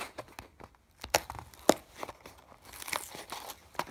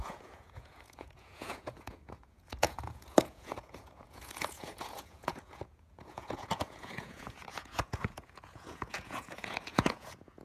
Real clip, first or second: first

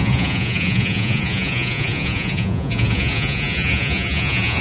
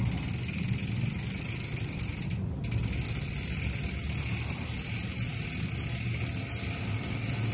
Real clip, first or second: second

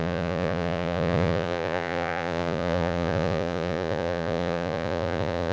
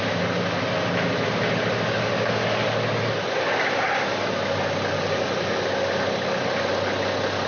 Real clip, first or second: second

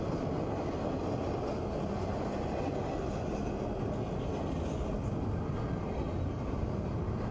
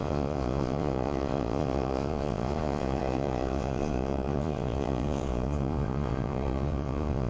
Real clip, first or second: first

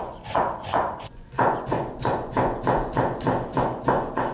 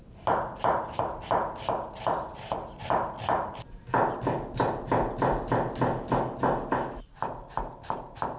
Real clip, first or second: second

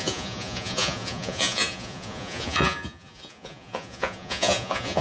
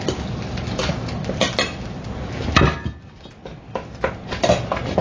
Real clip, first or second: second